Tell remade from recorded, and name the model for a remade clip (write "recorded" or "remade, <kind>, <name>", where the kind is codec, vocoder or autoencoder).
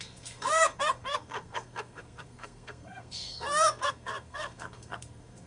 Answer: remade, codec, SNAC